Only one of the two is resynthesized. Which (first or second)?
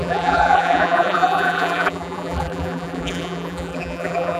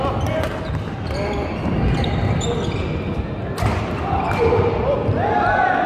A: first